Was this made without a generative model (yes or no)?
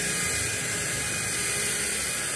no